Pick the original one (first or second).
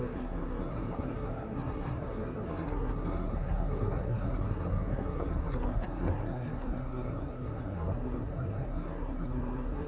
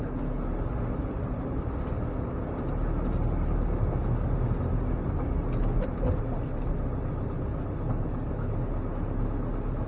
second